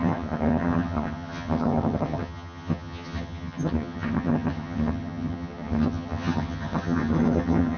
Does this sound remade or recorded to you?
remade